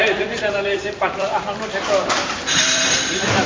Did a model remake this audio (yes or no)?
yes